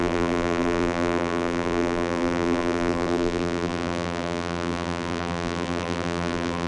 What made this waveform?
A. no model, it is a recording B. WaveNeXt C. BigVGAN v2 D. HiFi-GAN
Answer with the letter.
C